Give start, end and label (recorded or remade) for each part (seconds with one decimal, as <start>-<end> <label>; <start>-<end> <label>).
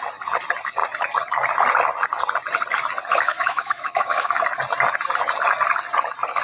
0.0-3.1 recorded; 3.1-4.3 remade; 4.3-6.4 recorded